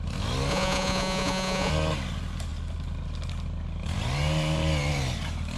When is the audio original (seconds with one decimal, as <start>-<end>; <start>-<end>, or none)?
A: 0.0-0.5; 1.7-5.6